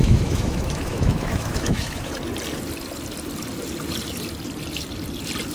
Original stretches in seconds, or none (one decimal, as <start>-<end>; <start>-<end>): 2.1-5.5